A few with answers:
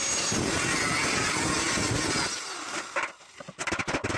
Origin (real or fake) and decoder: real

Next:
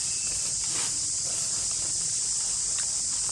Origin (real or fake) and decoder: real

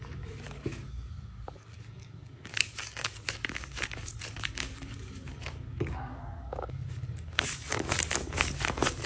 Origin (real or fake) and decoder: fake, codec, DAC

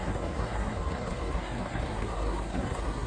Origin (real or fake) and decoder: fake, codec, SNAC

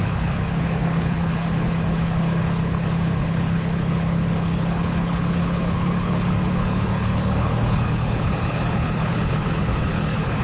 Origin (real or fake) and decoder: fake, codec, HILCodec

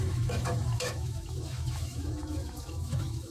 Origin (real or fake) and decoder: fake, autoencoder, DAC-VAE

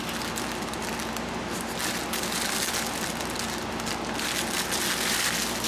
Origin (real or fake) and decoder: real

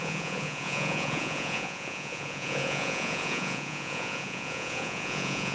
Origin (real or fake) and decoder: fake, vocoder, Vocos